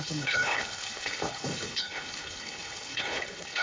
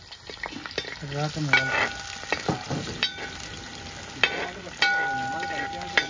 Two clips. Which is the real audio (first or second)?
second